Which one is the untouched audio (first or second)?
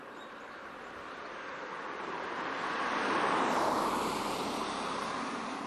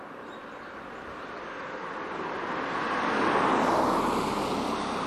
second